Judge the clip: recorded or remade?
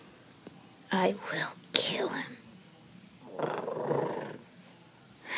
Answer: recorded